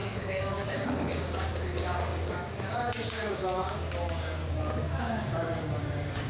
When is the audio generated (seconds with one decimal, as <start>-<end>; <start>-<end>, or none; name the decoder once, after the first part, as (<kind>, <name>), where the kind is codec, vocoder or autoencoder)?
0.0-6.3 (codec, DAC)